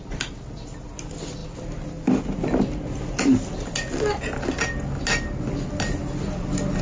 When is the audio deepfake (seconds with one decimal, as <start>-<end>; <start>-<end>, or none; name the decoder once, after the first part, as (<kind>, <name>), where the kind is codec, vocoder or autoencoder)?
none